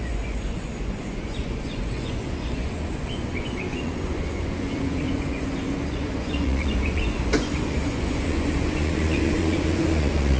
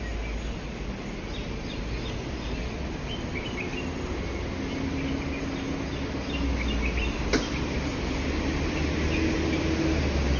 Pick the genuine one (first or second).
second